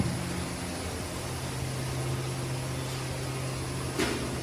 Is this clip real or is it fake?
real